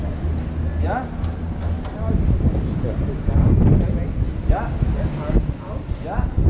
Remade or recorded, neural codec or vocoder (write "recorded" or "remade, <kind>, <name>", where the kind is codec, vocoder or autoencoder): recorded